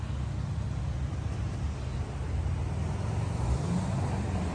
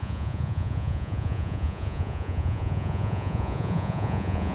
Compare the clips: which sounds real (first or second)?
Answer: first